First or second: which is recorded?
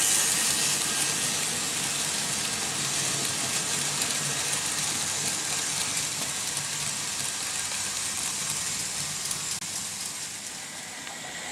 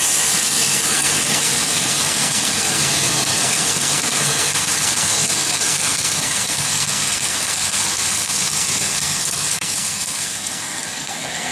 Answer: first